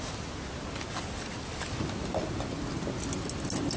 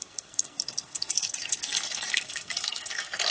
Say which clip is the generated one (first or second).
second